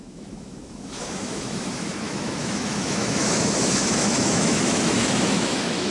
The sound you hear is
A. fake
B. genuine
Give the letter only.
A